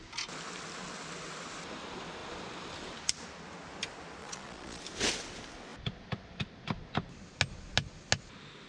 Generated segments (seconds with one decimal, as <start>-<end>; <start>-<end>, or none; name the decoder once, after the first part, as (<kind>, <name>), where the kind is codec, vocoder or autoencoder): 4.2-4.8 (vocoder, Vocos)